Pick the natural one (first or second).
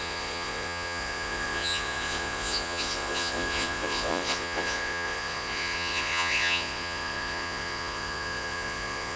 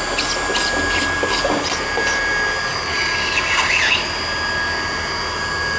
second